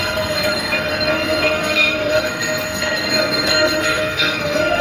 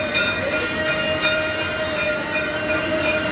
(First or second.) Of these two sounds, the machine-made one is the first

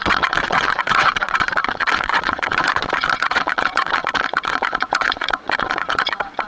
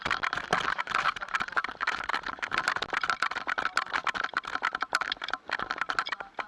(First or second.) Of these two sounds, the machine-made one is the first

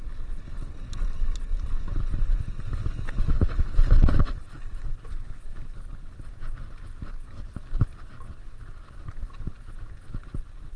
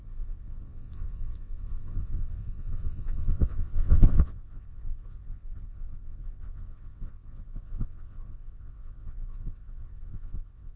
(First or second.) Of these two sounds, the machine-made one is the second